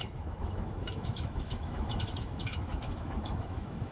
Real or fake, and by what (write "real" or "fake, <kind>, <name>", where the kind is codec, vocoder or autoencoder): fake, autoencoder, DAC-VAE